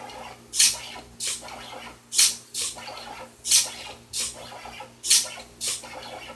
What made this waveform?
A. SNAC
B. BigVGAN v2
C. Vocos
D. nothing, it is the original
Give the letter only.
D